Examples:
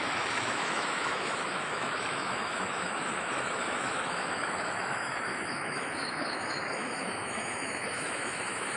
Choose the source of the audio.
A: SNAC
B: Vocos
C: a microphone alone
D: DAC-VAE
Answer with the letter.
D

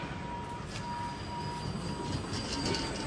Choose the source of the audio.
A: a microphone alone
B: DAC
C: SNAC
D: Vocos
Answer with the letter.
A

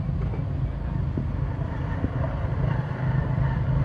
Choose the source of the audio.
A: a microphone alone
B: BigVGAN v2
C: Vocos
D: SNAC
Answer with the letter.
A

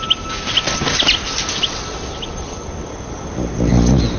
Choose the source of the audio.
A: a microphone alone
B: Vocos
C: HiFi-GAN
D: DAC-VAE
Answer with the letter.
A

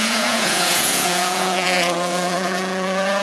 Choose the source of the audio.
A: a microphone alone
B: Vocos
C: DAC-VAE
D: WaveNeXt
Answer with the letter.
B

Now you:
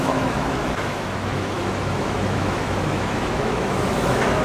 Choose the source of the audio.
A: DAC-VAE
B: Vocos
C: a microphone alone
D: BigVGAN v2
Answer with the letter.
A